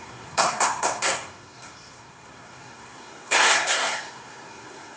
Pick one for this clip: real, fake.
fake